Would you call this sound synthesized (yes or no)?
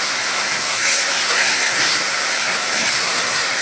yes